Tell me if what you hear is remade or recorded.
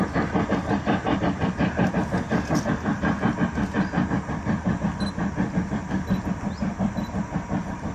recorded